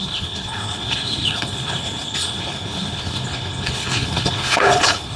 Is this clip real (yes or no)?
no